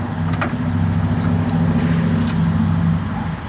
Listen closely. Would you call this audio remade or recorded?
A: recorded